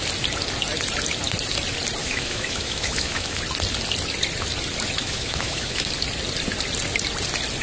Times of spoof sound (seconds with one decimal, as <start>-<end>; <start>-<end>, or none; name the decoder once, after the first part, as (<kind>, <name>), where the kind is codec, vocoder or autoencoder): 2.0-3.4 (autoencoder, DAC-VAE); 5.0-5.9